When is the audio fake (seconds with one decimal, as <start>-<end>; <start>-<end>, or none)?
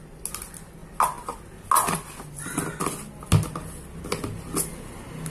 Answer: none